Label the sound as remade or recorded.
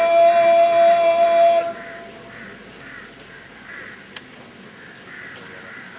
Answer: recorded